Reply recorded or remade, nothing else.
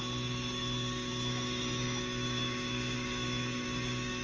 remade